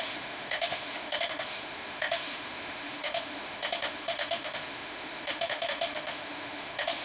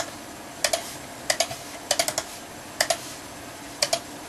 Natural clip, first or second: second